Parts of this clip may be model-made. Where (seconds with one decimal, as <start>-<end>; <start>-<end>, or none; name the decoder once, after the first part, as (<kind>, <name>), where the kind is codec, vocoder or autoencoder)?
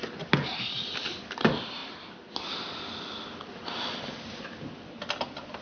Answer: none